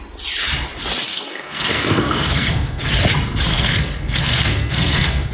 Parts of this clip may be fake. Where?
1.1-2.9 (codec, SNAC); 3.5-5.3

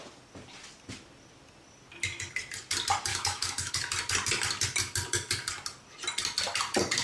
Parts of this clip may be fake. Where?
3.1-3.7 (autoencoder, DAC-VAE)

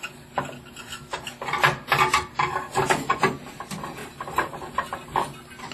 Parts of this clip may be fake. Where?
none

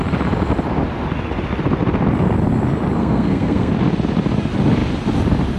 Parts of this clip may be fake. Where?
3.0-3.7 (codec, SNAC)

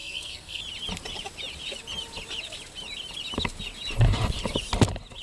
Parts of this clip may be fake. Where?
0.0-0.6 (codec, SNAC)